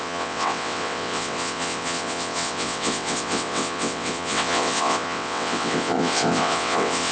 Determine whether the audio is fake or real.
fake